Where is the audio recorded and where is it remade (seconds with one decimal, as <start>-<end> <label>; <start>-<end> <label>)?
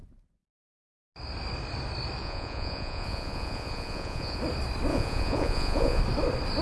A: 0.0-2.2 recorded; 2.2-4.4 remade; 4.4-4.9 recorded; 4.9-6.0 remade; 6.0-6.6 recorded